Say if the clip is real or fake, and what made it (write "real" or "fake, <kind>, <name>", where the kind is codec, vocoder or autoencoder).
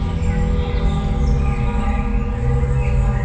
real